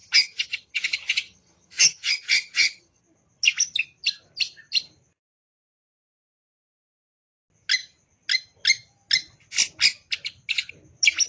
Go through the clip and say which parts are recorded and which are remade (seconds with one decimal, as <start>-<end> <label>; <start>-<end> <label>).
0.0-3.0 remade; 3.0-11.3 recorded